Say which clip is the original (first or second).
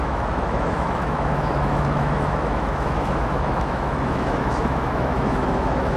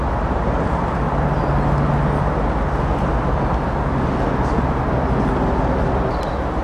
second